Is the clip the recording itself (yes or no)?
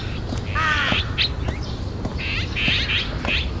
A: yes